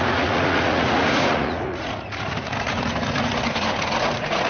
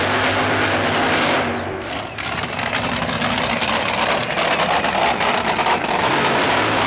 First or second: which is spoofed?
first